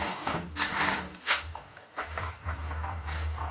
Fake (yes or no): yes